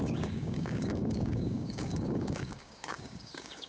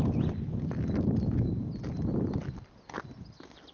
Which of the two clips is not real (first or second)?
first